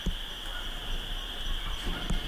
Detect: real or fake real